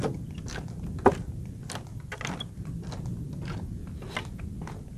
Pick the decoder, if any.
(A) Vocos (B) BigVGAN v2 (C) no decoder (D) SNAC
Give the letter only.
C